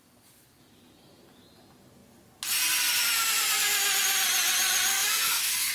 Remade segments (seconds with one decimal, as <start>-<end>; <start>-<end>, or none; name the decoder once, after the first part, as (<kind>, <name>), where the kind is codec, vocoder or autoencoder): 4.9-5.7 (codec, SNAC)

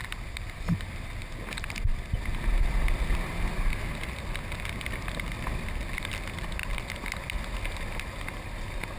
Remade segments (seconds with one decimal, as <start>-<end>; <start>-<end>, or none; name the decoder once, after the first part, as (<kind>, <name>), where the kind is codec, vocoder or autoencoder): none

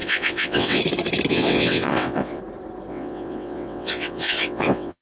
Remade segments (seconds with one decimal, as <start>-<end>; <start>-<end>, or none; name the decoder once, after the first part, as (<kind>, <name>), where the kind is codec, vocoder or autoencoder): 0.0-0.8 (vocoder, WaveNeXt); 1.3-2.4; 2.9-5.0